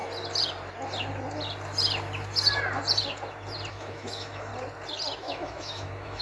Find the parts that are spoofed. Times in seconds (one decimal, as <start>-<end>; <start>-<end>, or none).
3.7-4.5; 5.2-6.2